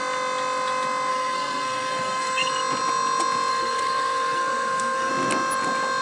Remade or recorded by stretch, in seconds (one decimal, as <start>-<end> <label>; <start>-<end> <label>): 0.0-1.1 recorded; 1.1-2.5 remade; 2.5-3.5 recorded; 3.5-5.1 remade; 5.1-6.0 recorded